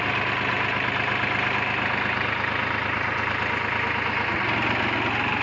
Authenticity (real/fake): real